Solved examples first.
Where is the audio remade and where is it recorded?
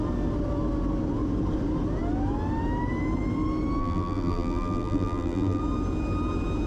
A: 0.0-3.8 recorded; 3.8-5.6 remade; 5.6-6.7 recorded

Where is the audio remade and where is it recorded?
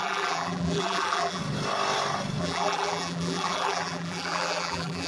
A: 0.0-1.4 remade; 1.4-2.4 recorded; 2.4-5.1 remade